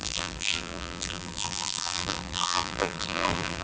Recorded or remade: remade